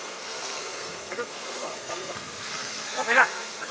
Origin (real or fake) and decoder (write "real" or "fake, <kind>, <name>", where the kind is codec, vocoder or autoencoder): fake, codec, SNAC